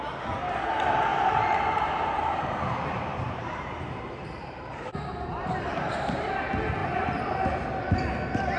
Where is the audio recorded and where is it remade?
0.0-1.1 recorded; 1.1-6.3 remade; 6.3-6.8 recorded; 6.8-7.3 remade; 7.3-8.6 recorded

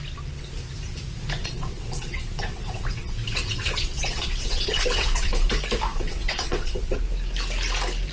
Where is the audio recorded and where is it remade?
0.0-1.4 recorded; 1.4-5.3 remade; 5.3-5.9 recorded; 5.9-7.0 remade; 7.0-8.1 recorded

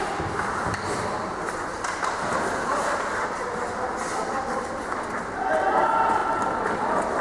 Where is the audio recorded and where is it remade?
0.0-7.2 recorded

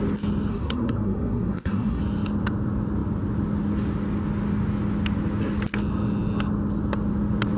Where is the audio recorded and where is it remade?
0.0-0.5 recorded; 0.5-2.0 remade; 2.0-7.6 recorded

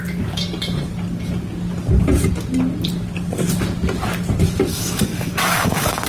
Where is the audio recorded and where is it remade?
0.0-4.7 recorded; 4.7-6.1 remade

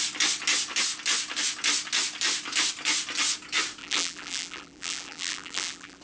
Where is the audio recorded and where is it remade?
0.0-3.8 recorded; 3.8-6.0 remade